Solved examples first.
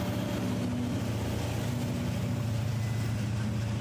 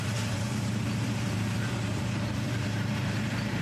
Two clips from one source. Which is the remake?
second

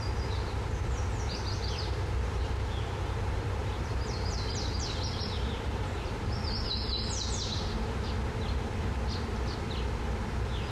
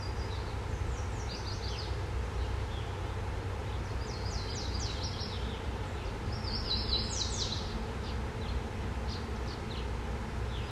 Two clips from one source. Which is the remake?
first